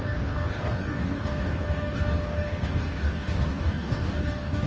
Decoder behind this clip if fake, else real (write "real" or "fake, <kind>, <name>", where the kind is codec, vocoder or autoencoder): fake, codec, DAC